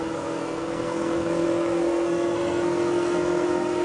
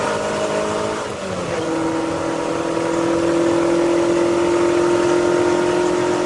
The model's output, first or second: first